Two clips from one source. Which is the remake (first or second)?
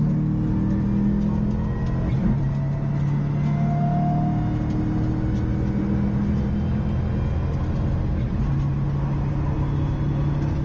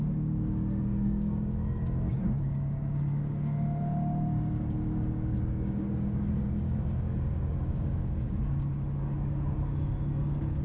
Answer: second